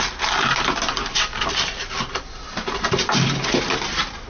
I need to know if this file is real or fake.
real